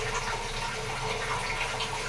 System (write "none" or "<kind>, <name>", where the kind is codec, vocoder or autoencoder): none